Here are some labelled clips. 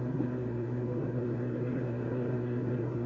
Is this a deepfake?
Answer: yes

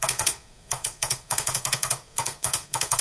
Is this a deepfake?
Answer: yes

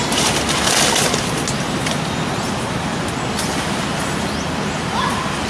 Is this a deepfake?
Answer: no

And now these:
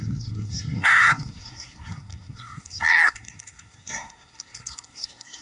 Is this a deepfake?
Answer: yes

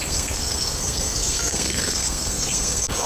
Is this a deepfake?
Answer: yes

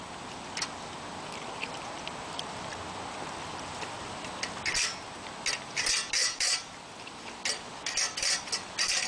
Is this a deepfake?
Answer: no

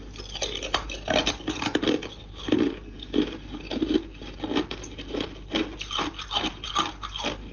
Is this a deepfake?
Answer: no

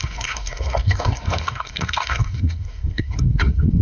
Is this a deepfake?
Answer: yes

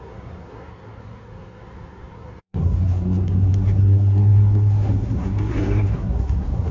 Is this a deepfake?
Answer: yes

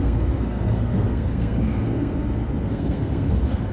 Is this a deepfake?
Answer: yes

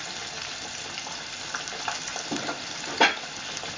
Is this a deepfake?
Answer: no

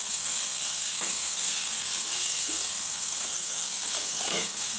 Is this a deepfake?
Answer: yes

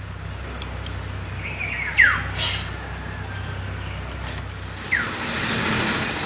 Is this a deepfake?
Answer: no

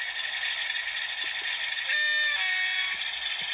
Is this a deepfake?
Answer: no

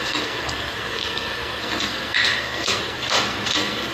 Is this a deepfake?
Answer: yes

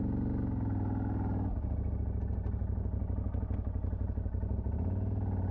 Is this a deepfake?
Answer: no